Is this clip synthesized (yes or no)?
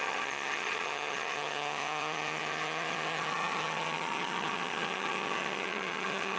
yes